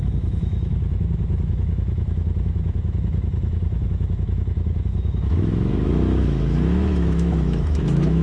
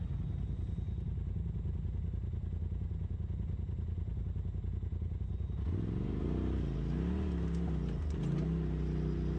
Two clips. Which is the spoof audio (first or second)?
first